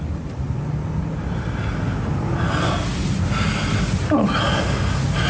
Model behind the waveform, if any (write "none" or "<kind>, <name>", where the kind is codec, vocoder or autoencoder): none